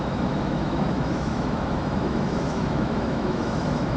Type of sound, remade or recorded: remade